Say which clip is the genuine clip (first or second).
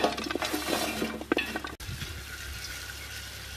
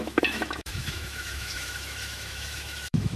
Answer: first